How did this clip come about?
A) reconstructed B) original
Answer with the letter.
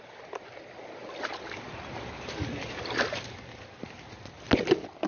B